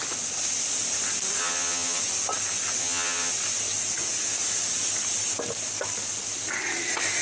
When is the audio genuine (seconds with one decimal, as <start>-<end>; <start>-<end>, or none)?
0.0-1.4; 2.0-2.8; 3.3-7.2